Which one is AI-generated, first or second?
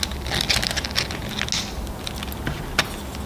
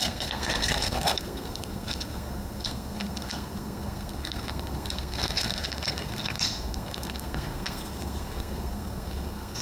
second